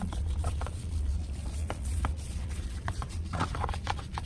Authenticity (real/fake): fake